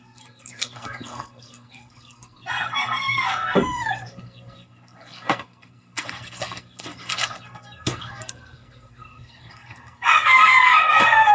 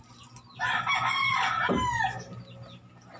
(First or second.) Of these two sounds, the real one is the second